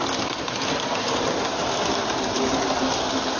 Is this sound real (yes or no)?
yes